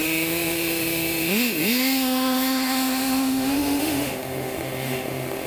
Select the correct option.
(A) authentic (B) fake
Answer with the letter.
B